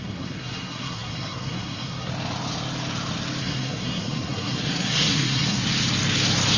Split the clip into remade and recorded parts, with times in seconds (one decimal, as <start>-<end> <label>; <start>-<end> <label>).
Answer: 0.0-2.1 remade; 2.1-3.4 recorded; 3.4-5.6 remade; 5.6-6.6 recorded